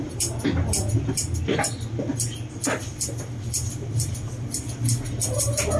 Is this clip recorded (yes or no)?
yes